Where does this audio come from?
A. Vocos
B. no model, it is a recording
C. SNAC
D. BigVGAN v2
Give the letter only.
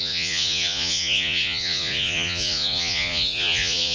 A